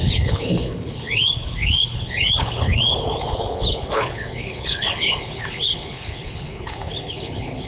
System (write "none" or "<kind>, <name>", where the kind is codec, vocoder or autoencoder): codec, HILCodec